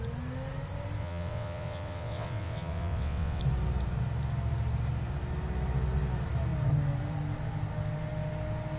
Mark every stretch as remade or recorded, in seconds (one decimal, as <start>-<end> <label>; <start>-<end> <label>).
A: 0.0-1.0 recorded; 1.0-3.4 remade; 3.4-8.8 recorded